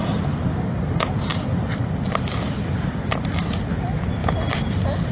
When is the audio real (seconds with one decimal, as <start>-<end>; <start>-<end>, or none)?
0.0-5.1